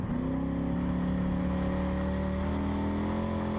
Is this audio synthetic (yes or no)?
no